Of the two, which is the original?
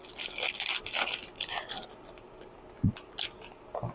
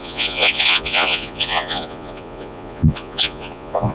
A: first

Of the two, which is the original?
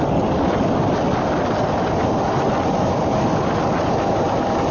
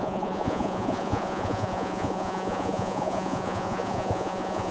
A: first